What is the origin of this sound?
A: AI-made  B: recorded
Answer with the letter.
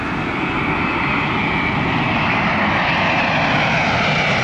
B